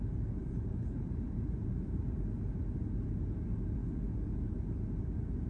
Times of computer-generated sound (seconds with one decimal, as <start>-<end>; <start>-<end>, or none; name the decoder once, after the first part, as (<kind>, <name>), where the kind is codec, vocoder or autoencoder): 0.4-2.5 (vocoder, BigVGAN v2)